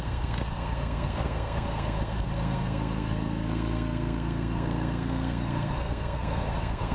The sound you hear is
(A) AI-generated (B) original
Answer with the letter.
A